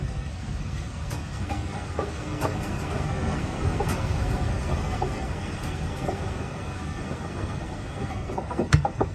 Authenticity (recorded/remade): remade